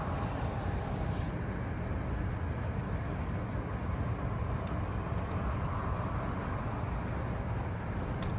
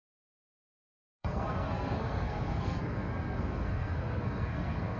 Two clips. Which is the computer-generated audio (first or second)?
second